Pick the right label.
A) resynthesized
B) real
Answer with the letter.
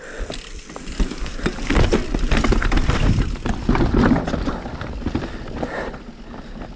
B